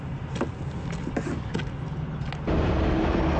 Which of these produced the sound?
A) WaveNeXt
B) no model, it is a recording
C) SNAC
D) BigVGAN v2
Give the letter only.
B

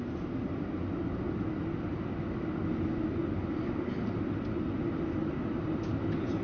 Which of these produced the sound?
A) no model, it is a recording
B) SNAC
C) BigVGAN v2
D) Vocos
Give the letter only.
A